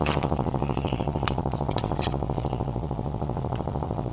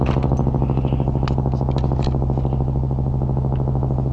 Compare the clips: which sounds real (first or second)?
second